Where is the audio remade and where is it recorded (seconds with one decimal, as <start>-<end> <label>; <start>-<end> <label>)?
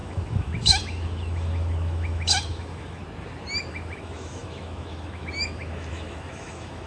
0.0-3.0 remade; 3.0-3.7 recorded; 3.7-6.9 remade